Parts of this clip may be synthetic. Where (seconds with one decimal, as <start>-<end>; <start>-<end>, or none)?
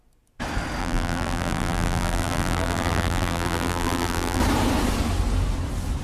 0.8-4.4